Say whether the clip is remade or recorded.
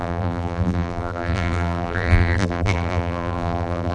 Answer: remade